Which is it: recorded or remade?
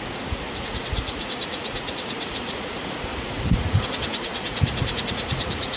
remade